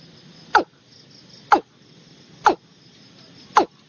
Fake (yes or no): no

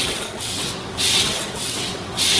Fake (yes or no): yes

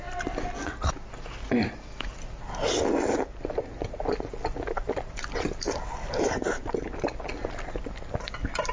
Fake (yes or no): no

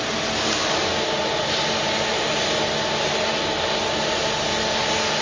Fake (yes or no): no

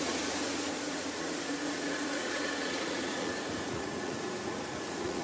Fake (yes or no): yes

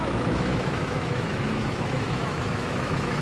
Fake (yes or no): yes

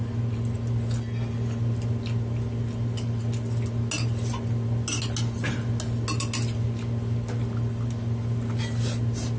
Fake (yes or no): no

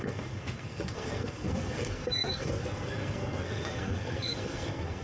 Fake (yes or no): yes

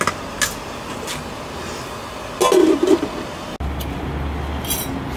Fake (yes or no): no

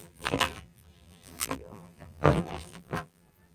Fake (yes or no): yes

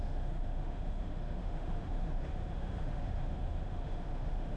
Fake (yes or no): yes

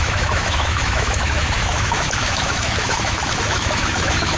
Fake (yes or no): yes